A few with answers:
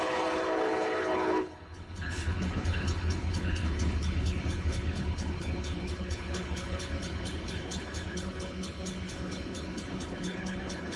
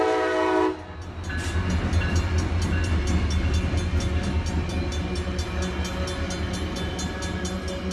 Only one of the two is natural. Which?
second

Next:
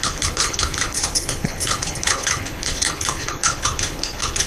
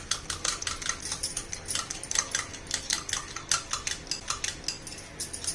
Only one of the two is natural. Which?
second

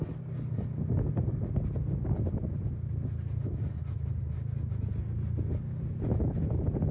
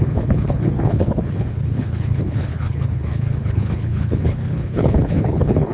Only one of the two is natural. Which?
first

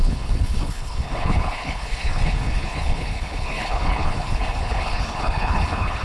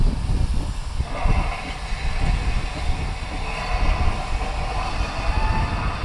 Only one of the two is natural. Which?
second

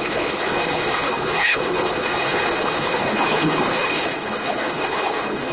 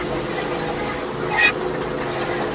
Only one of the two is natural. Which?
second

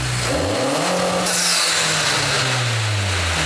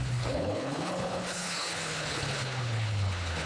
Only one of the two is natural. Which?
first